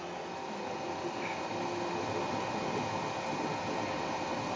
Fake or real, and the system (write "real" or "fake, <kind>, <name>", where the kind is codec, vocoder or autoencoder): real